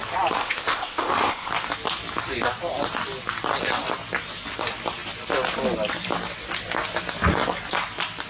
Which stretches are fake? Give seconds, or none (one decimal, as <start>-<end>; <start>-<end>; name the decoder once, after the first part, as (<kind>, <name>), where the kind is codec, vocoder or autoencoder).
0.4-1.5 (codec, ZipCodec)